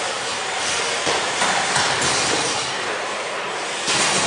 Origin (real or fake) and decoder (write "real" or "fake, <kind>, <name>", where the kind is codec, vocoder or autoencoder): fake, vocoder, BigVGAN v2